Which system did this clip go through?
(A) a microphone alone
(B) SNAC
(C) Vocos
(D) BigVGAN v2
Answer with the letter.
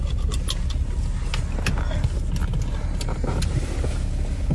A